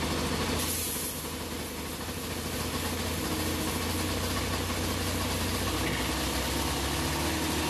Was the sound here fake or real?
real